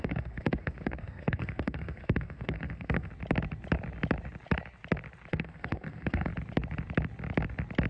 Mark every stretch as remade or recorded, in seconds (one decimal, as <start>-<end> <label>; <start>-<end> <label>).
0.0-3.1 remade; 3.1-5.3 recorded; 5.3-6.3 remade; 6.3-7.9 recorded

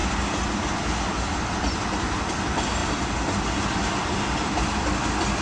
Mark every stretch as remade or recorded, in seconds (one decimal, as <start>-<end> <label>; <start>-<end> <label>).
0.0-5.4 recorded

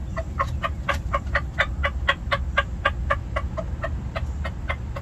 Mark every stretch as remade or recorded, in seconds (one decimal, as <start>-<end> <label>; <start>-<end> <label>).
0.0-1.2 recorded; 1.2-1.8 remade; 1.8-5.0 recorded